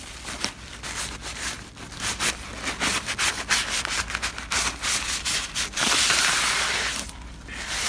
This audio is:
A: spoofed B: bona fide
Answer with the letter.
B